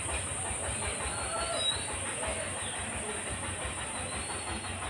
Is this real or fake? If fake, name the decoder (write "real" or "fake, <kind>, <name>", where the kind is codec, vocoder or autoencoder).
real